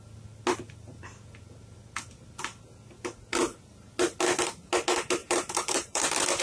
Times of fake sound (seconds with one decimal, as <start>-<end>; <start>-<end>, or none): 5.2-6.4